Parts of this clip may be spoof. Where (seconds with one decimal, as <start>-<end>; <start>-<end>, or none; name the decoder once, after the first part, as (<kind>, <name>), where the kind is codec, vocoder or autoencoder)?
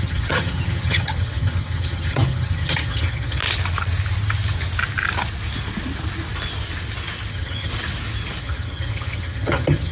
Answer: 0.0-3.4 (vocoder, HiFi-GAN); 7.3-7.7; 8.4-9.9